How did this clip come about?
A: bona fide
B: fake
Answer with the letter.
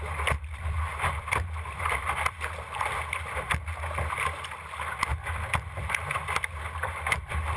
A